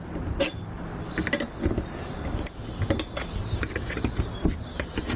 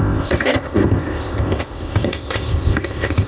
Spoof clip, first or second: second